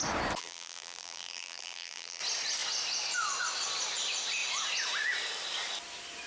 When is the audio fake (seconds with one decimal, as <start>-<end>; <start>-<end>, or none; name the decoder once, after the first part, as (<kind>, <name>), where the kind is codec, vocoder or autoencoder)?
0.4-2.2 (vocoder, BigVGAN v2)